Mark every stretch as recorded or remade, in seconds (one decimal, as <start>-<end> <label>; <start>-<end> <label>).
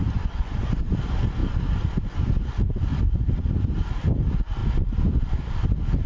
0.0-6.1 recorded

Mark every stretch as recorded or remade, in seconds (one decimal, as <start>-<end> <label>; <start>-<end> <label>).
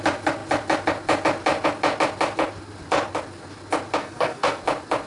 0.0-4.0 recorded; 4.0-4.6 remade; 4.6-5.1 recorded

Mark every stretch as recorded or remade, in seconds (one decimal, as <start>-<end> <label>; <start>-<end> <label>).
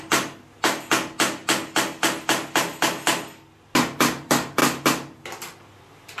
0.0-6.2 recorded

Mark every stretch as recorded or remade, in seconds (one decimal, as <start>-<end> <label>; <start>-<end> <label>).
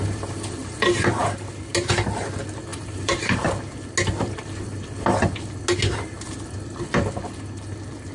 0.0-0.6 recorded; 0.6-1.5 remade; 1.5-2.7 recorded; 2.7-3.5 remade; 3.5-8.1 recorded